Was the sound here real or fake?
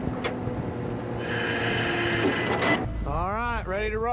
real